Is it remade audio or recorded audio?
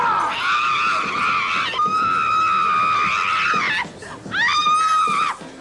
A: recorded